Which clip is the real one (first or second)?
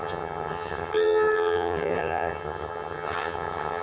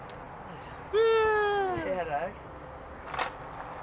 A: second